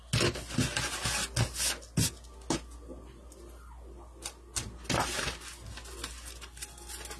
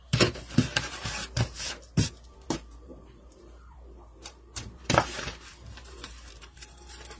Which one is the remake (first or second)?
second